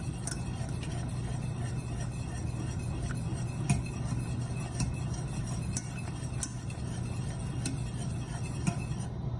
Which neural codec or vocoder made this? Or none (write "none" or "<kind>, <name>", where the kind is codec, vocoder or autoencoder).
none